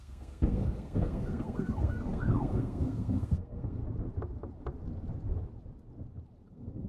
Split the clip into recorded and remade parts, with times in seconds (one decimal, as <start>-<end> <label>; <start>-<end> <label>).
0.0-3.8 remade; 3.8-6.5 recorded; 6.5-6.9 remade